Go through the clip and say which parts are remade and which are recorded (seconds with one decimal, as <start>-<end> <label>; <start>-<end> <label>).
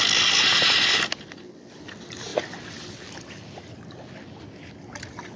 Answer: 0.0-5.4 recorded